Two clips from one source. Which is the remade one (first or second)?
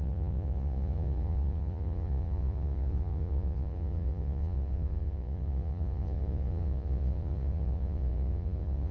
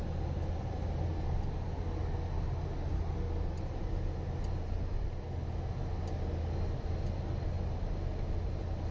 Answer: first